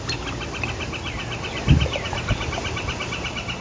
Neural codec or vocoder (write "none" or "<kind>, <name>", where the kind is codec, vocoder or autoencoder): none